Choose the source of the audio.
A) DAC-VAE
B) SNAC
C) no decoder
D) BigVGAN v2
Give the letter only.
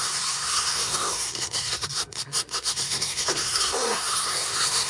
B